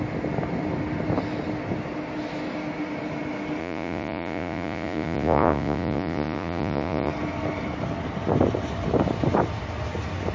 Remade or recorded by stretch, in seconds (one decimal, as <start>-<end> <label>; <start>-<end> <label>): 0.0-3.6 recorded; 3.6-7.1 remade; 7.1-10.3 recorded